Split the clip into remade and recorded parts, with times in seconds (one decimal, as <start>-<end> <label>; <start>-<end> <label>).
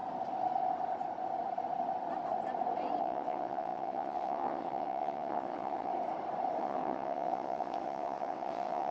0.0-3.0 recorded; 3.0-5.9 remade; 5.9-6.6 recorded; 6.6-8.9 remade